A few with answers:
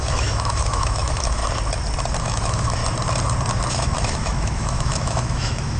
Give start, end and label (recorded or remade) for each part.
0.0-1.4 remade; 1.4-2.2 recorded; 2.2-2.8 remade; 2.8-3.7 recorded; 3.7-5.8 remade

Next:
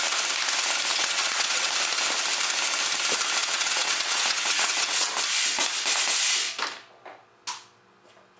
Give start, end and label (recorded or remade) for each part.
0.0-0.9 recorded; 0.9-1.7 remade; 1.7-3.4 recorded; 3.4-5.1 remade; 5.1-8.4 recorded

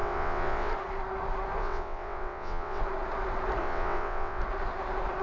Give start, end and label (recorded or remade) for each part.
0.0-0.7 remade; 0.7-1.6 recorded; 1.6-2.8 remade; 2.8-3.6 recorded; 3.6-4.4 remade; 4.4-5.2 recorded